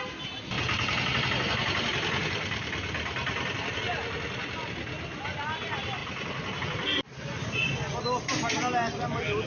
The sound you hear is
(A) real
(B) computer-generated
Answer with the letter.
A